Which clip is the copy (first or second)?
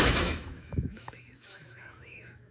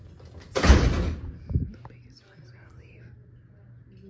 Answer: first